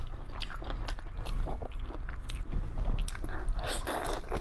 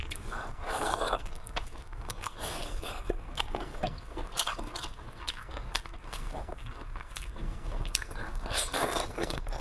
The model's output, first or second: second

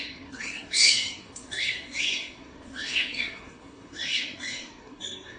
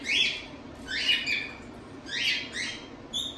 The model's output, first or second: first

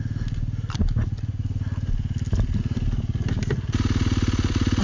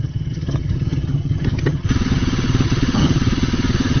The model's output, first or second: second